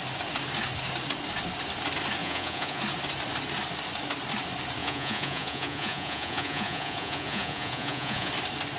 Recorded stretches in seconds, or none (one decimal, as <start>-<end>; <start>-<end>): 0.0-2.2; 2.8-4.8; 8.3-8.8